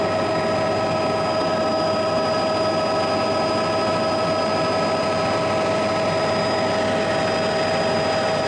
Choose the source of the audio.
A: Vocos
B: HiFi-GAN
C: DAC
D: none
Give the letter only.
D